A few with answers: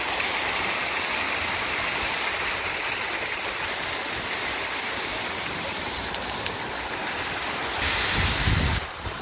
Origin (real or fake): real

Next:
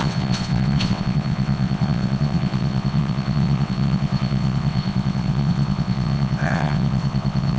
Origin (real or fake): fake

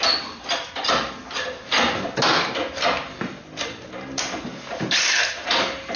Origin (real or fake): real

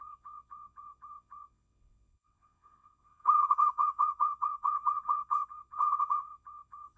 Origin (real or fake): fake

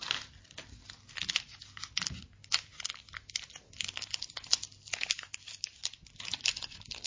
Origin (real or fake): real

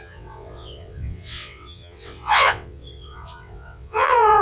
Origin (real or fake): fake